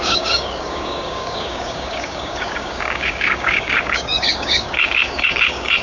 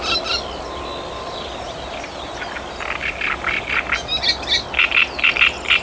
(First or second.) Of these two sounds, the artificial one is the first